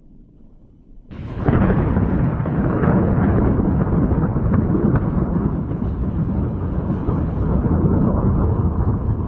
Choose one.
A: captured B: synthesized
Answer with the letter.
B